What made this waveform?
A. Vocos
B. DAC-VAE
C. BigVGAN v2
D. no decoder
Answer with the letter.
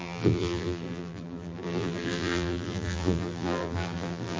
C